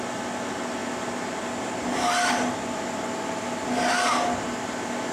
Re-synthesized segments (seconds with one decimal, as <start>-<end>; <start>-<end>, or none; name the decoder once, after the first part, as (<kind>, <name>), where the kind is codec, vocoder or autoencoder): none